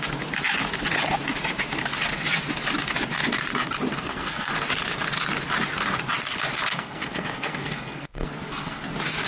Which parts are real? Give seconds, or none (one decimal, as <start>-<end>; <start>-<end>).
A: 0.0-3.9; 4.5-6.7; 8.9-9.3